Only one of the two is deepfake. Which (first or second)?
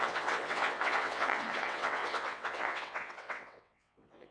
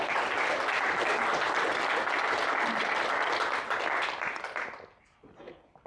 first